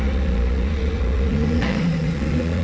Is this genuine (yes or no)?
no